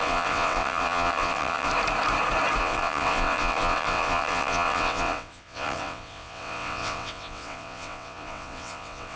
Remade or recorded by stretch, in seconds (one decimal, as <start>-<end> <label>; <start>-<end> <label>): 0.0-1.7 remade; 1.7-2.6 recorded; 2.6-9.2 remade